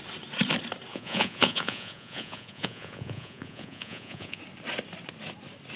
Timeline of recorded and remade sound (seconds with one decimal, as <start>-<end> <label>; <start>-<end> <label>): 0.0-0.9 recorded; 0.9-4.4 remade; 4.4-5.8 recorded